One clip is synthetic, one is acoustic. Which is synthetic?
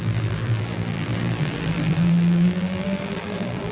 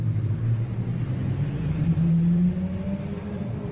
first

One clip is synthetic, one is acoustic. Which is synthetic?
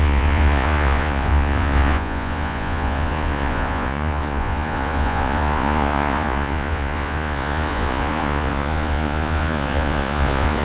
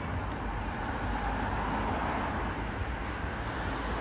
first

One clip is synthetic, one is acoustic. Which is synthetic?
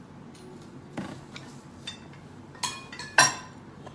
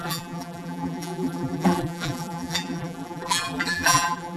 second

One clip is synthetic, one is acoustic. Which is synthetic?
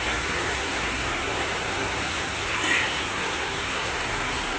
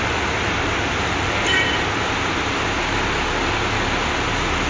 first